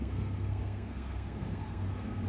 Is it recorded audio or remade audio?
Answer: remade